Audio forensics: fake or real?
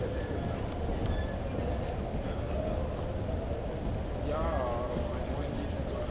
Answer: real